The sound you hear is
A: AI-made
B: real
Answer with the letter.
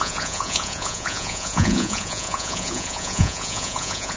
A